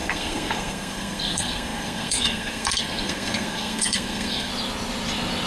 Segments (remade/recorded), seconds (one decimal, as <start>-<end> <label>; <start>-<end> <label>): 0.0-4.5 remade; 4.5-5.5 recorded